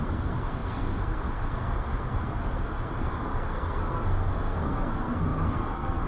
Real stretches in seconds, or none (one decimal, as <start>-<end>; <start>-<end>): none

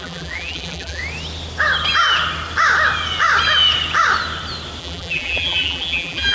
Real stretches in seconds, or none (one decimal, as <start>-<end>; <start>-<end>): 1.0-4.8

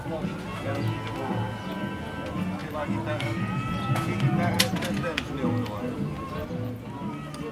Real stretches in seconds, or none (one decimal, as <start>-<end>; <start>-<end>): 0.0-7.5